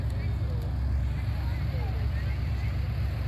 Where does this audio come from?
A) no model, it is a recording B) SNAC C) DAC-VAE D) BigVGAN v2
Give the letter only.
A